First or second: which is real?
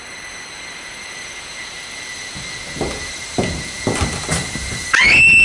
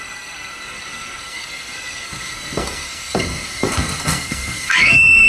first